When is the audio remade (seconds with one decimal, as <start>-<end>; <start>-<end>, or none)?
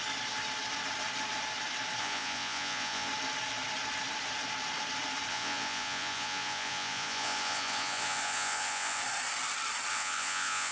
2.0-3.1; 5.3-9.0; 9.9-10.7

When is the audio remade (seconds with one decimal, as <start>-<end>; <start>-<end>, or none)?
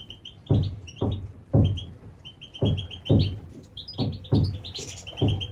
none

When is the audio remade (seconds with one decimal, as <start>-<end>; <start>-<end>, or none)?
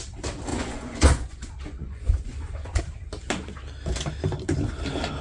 0.5-2.8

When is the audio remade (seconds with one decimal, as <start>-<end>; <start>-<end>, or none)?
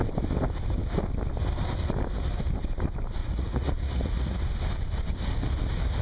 3.2-4.4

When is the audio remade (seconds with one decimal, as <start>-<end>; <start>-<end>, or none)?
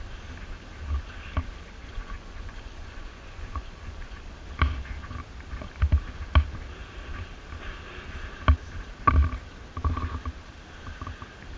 1.8-4.2